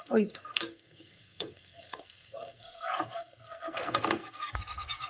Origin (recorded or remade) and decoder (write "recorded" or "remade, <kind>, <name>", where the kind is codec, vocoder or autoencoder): remade, codec, SNAC